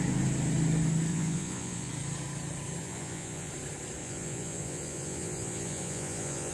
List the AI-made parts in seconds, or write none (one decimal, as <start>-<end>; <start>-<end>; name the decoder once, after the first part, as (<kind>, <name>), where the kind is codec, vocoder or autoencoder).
1.1-1.9 (vocoder, Vocos); 2.8-3.5; 4.0-6.5